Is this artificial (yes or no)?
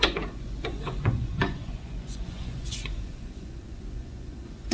yes